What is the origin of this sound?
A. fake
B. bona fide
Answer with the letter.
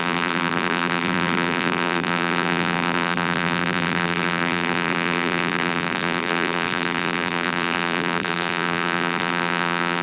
A